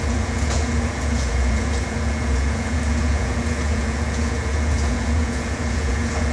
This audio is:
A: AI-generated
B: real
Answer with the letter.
A